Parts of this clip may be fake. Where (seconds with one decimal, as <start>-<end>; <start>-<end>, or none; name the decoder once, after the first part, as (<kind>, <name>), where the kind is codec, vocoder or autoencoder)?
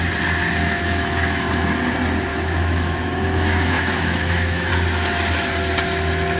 0.6-1.5 (autoencoder, DAC-VAE); 2.3-4.7